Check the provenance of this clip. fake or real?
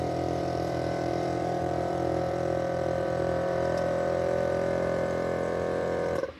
fake